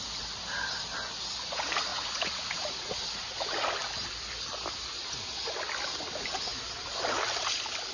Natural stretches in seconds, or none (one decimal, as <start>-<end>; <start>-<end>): 0.0-1.9; 2.9-7.9